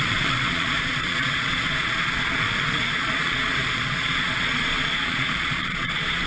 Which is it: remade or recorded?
remade